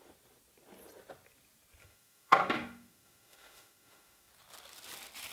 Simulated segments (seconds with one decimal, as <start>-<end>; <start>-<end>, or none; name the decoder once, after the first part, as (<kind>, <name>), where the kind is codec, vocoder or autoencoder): 1.8-4.3 (autoencoder, DAC-VAE)